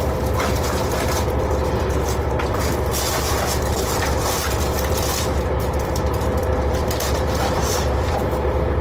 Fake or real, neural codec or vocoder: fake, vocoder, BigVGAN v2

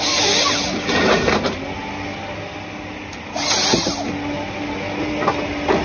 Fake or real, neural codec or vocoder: real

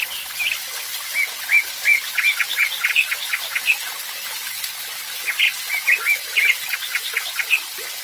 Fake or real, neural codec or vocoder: real